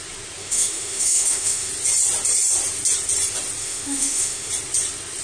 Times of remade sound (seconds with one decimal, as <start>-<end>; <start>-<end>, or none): 0.4-1.7; 3.6-4.5